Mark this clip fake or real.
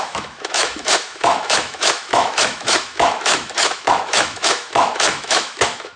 fake